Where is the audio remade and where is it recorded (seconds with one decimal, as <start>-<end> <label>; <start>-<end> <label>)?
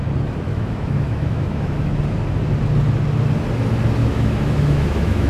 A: 0.0-0.5 recorded; 0.5-2.0 remade; 2.0-4.0 recorded; 4.0-5.3 remade